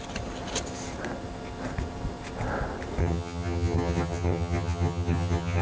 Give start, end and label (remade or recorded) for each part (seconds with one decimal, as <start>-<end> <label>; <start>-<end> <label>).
0.0-3.0 recorded; 3.0-5.6 remade